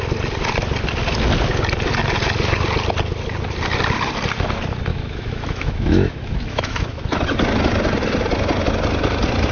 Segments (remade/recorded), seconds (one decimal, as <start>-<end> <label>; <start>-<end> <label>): 0.0-4.9 recorded; 4.9-7.2 remade; 7.2-9.5 recorded